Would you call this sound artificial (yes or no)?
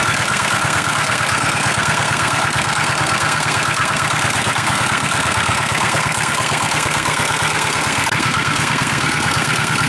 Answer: yes